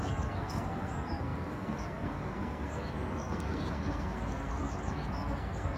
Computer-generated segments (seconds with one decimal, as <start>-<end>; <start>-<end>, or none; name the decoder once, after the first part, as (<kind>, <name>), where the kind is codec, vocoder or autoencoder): 0.0-5.8 (codec, SNAC)